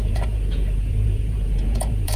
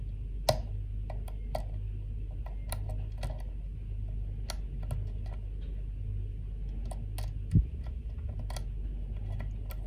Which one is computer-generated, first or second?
first